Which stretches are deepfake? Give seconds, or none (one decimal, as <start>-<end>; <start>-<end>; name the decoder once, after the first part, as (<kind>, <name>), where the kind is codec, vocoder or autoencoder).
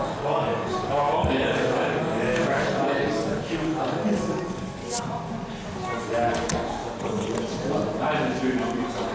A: 0.0-4.8 (codec, DAC); 6.0-6.8